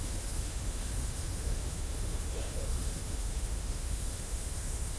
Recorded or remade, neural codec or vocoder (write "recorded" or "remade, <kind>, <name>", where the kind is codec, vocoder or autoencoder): remade, autoencoder, DAC-VAE